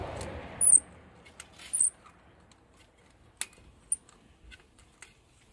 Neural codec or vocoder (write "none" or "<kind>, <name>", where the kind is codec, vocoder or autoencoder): none